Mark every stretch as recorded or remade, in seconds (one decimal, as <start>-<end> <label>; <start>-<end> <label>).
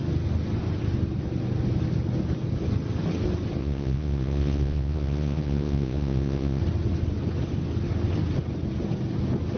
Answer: 0.0-3.6 recorded; 3.6-6.6 remade; 6.6-9.6 recorded